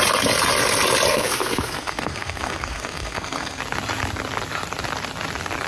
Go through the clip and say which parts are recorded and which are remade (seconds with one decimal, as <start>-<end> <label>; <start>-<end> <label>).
0.0-1.1 recorded; 1.1-3.6 remade; 3.6-5.7 recorded